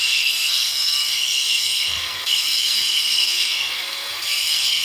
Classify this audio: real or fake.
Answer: fake